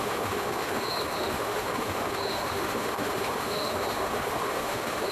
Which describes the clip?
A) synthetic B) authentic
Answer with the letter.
A